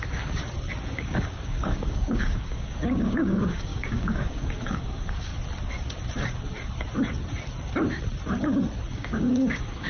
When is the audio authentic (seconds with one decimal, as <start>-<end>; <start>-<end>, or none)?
0.4-0.9; 5.3-8.9